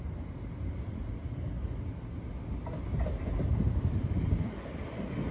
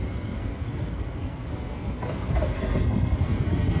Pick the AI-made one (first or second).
second